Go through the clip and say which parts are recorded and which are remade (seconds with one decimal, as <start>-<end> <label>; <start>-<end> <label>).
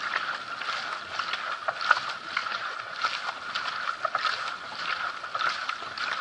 0.0-2.4 recorded; 2.4-3.0 remade; 3.0-6.2 recorded